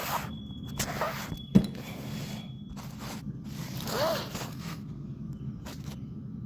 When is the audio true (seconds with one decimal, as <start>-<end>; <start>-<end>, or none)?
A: 0.0-4.5; 5.3-6.5